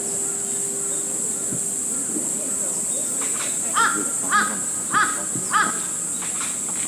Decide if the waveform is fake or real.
real